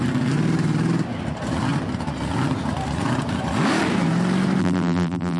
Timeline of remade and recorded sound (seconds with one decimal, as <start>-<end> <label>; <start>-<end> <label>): 0.0-4.6 recorded; 4.6-5.4 remade